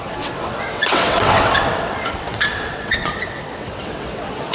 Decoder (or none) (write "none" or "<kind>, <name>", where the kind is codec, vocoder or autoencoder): vocoder, WaveNeXt